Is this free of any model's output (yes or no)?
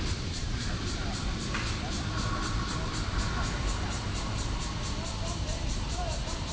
no